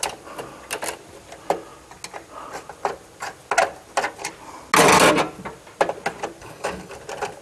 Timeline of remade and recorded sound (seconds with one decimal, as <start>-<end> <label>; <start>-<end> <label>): 0.0-6.4 recorded; 6.4-6.9 remade; 6.9-7.4 recorded